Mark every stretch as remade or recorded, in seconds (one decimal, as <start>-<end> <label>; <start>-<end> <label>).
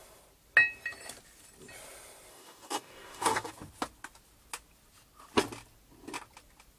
0.0-2.3 recorded; 2.3-3.5 remade; 3.5-6.8 recorded